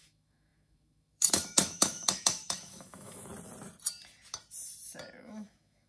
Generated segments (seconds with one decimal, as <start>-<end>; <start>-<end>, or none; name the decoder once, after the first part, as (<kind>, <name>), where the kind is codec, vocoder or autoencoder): 0.0-3.3 (autoencoder, DAC-VAE); 5.2-5.9